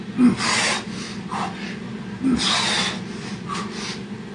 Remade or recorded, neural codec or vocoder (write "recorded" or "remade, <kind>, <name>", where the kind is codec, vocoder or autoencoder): recorded